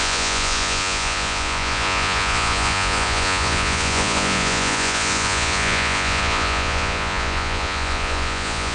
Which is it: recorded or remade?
remade